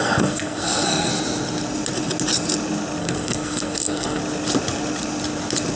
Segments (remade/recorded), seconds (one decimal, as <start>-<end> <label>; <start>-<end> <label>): 0.0-1.1 remade; 1.1-3.0 recorded; 3.0-4.2 remade; 4.2-5.8 recorded